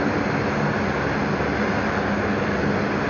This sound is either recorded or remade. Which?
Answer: recorded